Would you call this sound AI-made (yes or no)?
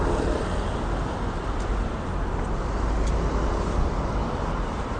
no